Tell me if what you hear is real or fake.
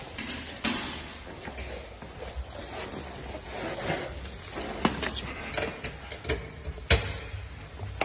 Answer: real